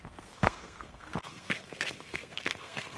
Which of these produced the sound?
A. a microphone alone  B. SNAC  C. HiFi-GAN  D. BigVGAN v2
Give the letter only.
B